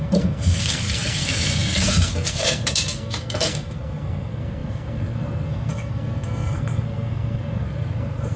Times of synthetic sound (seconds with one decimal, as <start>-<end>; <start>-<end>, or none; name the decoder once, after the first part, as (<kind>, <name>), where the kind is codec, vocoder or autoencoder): 0.0-8.4 (codec, SNAC)